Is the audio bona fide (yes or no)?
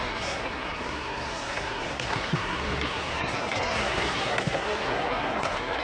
no